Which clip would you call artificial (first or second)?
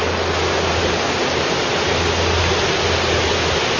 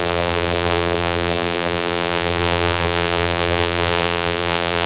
second